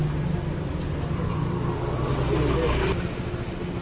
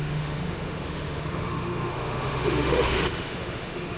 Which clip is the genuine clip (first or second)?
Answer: first